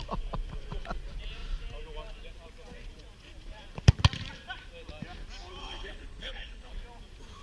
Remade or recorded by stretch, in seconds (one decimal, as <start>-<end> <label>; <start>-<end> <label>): 0.0-5.6 recorded; 5.6-6.7 remade; 6.7-7.4 recorded